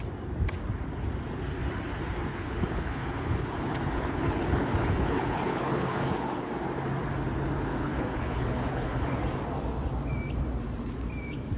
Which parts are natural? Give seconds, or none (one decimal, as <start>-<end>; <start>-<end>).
0.0-2.3; 6.5-7.7; 9.2-11.6